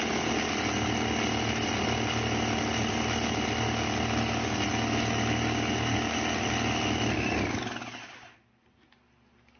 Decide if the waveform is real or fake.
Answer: real